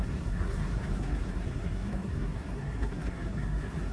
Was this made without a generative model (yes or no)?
no